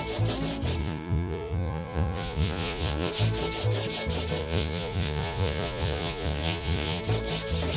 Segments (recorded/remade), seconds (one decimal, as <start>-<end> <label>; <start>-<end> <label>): 0.0-0.8 recorded; 0.8-3.1 remade; 3.1-4.4 recorded; 4.4-7.0 remade; 7.0-7.8 recorded